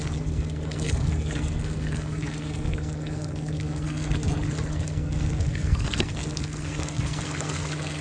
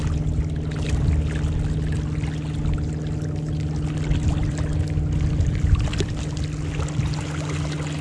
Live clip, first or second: second